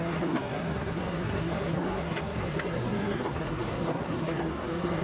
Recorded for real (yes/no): no